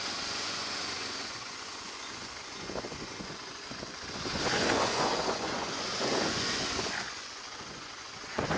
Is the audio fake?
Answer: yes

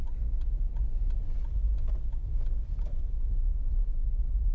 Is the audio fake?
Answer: no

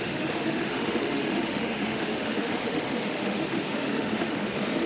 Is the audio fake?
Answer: yes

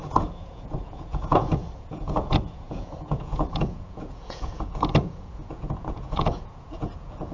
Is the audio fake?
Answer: yes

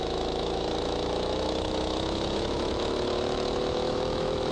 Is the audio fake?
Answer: yes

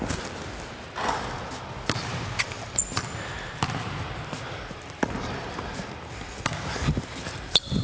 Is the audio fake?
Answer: no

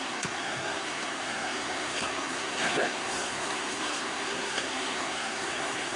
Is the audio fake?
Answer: yes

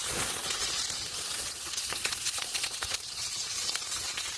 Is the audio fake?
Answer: yes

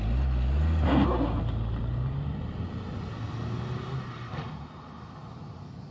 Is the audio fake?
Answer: no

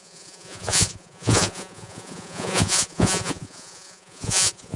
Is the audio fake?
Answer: yes